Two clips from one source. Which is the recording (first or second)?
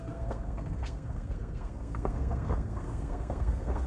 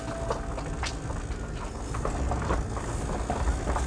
second